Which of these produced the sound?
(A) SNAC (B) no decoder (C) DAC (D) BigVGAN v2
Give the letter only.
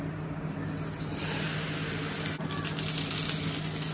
B